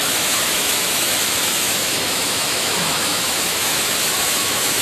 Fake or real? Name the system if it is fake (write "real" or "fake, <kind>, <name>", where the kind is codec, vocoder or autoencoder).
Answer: fake, autoencoder, DAC-VAE